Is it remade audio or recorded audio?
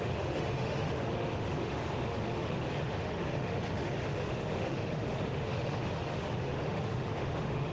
remade